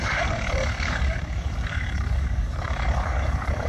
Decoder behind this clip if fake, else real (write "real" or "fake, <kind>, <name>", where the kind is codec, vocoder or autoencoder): fake, codec, DAC